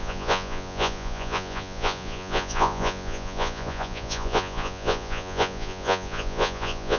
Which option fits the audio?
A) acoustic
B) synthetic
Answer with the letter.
B